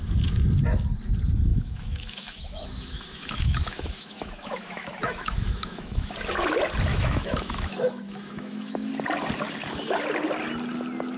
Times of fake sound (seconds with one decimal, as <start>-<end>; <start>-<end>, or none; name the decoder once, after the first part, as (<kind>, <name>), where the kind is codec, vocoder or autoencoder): 1.5-6.1 (autoencoder, DAC-VAE); 6.9-8.9